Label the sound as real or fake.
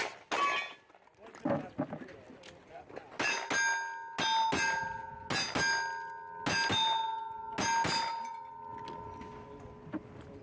real